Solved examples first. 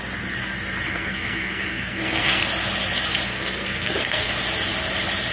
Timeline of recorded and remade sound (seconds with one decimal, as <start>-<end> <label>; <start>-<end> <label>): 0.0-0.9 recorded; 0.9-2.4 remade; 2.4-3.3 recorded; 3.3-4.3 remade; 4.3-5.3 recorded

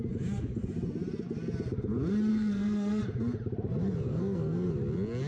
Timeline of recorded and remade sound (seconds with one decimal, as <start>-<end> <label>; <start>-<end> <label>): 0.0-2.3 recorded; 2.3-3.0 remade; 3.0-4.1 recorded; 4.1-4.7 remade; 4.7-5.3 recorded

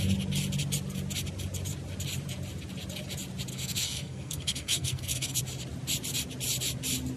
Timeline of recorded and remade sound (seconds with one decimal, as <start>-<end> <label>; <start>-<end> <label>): 0.0-3.5 recorded; 3.5-5.4 remade; 5.4-7.2 recorded

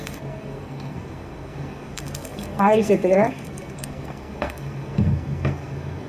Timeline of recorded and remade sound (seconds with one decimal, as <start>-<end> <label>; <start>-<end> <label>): 0.0-6.1 remade